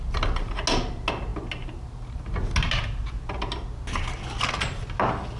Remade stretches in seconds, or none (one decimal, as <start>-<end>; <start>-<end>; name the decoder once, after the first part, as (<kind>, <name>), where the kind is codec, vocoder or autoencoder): none